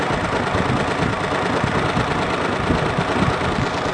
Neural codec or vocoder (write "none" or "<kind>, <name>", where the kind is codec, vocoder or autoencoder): none